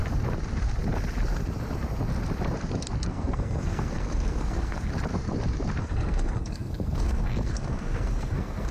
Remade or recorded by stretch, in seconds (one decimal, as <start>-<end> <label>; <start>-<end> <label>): 0.0-3.1 recorded; 3.1-4.9 remade; 4.9-5.8 recorded; 5.8-8.7 remade

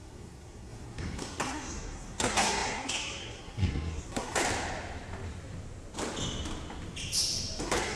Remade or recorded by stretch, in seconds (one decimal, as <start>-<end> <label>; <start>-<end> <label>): 0.0-4.4 remade; 4.4-7.6 recorded; 7.6-8.0 remade